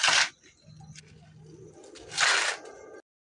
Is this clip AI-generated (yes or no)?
no